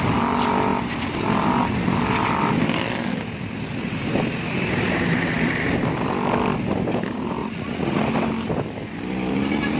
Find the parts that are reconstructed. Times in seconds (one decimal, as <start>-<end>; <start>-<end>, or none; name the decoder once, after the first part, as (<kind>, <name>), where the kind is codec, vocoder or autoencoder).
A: 7.4-8.0 (vocoder, Vocos)